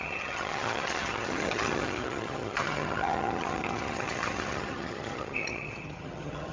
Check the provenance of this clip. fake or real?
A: fake